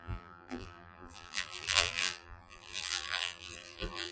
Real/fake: fake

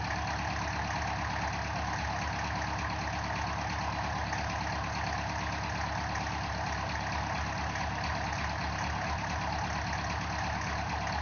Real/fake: real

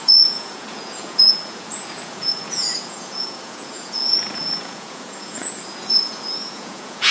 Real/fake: fake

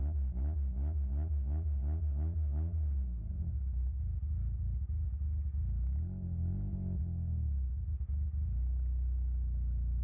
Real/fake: real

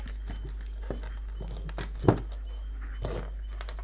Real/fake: real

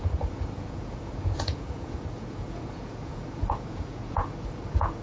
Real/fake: fake